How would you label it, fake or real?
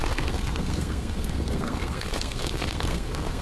fake